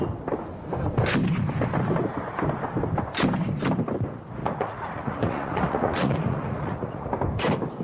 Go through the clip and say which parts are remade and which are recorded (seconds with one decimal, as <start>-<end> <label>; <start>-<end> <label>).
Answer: 0.0-4.4 recorded; 4.4-7.1 remade; 7.1-7.8 recorded